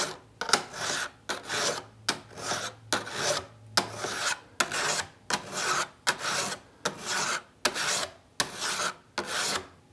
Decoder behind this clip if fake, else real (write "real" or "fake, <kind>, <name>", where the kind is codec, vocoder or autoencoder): real